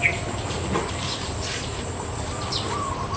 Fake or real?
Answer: real